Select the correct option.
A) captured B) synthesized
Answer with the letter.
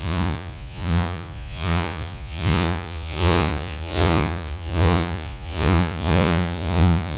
B